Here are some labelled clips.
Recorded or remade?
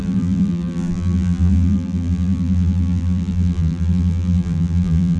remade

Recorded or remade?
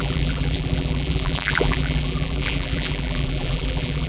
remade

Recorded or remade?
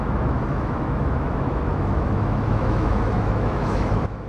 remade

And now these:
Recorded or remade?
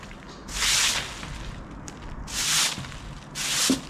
recorded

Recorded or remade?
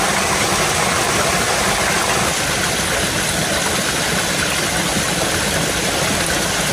recorded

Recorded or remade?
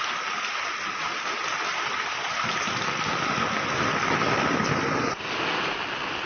recorded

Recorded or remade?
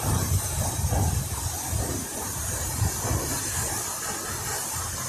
recorded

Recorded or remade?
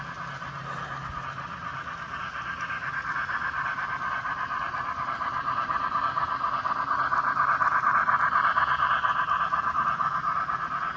recorded